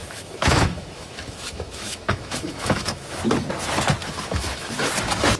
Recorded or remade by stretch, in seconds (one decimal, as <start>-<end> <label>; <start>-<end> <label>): 0.0-3.2 remade; 3.2-4.0 recorded; 4.0-4.9 remade; 4.9-5.4 recorded